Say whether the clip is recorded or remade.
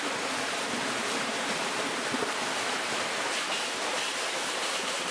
remade